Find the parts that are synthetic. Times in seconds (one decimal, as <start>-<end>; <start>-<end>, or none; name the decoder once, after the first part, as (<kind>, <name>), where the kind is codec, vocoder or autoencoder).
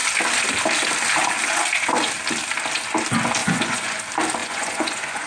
3.4-4.0 (vocoder, Vocos); 4.4-5.3